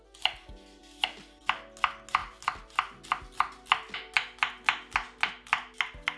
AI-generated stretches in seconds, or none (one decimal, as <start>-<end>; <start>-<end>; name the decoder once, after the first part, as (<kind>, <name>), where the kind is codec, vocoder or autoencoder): none